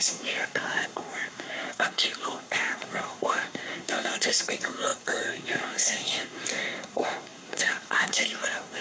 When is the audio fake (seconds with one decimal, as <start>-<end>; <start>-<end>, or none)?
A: 0.0-8.8